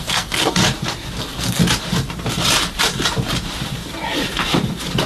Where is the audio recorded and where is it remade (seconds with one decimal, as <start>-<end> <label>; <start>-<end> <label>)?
0.0-0.6 remade; 0.6-1.2 recorded; 1.2-1.6 remade; 1.6-5.1 recorded